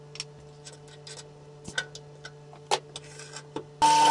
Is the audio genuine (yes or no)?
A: yes